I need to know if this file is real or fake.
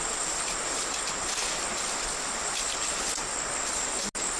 real